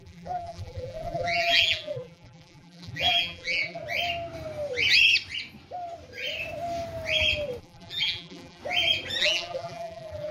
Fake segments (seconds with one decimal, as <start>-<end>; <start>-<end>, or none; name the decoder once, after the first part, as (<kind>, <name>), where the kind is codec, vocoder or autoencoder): 0.0-3.8 (vocoder, BigVGAN v2); 7.6-8.6; 9.2-10.3